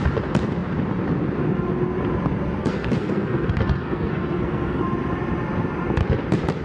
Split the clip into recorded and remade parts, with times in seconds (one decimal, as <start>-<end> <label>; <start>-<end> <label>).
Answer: 0.0-2.6 recorded; 2.6-4.8 remade; 4.8-6.6 recorded